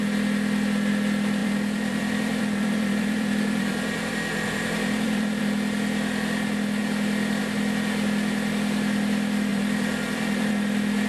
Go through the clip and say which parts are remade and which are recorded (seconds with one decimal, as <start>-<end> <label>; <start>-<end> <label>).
0.0-1.4 recorded; 1.4-5.4 remade; 5.4-9.5 recorded; 9.5-10.5 remade; 10.5-11.1 recorded